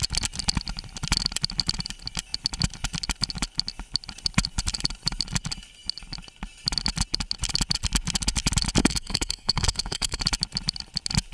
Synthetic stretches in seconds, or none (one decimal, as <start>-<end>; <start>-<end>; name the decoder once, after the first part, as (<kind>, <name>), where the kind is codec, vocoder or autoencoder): 8.8-10.2 (codec, SNAC)